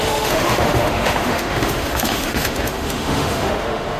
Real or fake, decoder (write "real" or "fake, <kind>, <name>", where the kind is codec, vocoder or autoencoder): fake, autoencoder, DAC-VAE